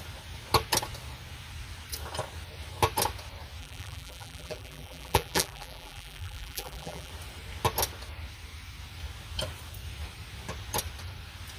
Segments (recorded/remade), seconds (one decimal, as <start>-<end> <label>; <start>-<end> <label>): 0.0-3.6 recorded; 3.6-7.1 remade; 7.1-11.6 recorded